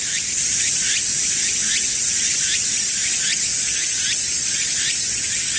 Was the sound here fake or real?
real